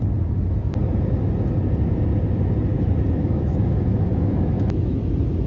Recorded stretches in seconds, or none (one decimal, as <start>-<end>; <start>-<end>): 0.0-2.7; 5.0-5.5